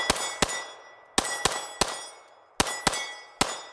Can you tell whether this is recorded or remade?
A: recorded